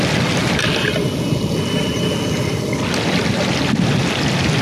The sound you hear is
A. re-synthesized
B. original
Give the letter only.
B